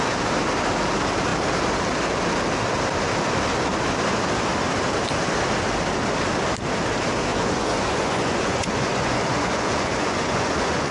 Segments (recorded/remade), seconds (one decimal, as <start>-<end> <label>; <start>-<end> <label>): 0.0-7.3 recorded; 7.3-10.9 remade